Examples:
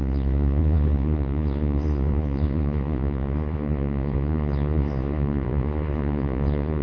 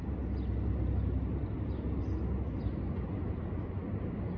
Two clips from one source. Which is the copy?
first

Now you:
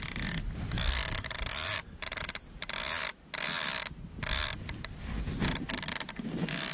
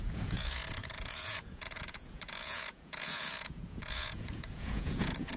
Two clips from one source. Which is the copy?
second